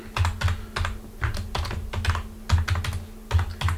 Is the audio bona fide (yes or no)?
yes